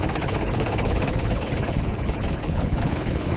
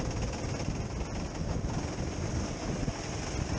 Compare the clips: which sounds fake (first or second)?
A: first